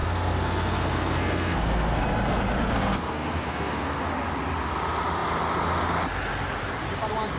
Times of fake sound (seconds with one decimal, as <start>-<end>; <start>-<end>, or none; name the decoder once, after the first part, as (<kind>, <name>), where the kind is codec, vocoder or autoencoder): 0.0-2.0 (codec, SNAC); 2.6-4.0